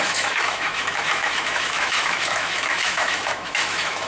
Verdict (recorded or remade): remade